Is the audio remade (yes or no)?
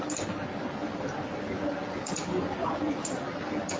no